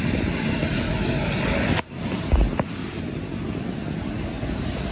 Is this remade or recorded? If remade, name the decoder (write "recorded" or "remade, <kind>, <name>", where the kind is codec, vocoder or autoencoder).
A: recorded